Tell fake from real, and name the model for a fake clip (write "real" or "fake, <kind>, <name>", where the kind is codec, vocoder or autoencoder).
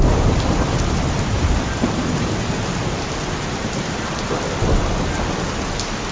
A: fake, vocoder, BigVGAN v2